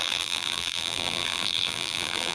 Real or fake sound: fake